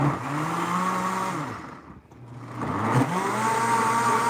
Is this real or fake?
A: real